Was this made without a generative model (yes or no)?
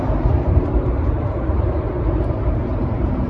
no